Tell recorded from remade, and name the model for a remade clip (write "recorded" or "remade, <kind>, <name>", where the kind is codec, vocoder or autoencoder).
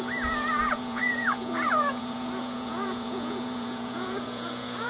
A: remade, vocoder, Vocos